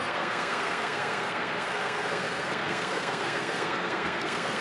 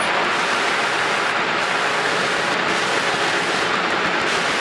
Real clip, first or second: second